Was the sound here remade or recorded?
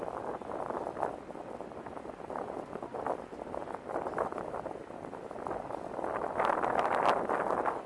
recorded